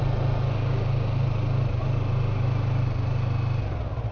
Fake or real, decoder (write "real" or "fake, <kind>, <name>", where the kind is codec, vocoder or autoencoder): real